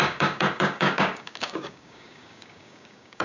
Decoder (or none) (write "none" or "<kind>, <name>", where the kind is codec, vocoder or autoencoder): codec, DAC